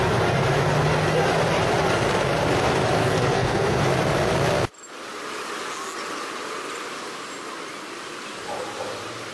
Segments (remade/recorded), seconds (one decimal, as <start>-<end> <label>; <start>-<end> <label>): 0.0-3.0 recorded; 3.0-3.8 remade; 3.8-9.3 recorded